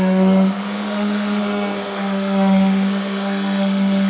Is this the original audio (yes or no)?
no